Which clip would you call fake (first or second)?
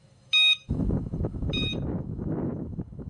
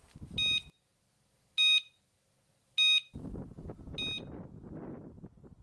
first